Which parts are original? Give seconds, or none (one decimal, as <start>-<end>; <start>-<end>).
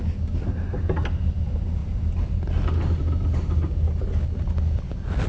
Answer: 0.0-5.3